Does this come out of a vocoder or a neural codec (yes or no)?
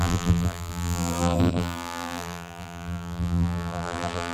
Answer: yes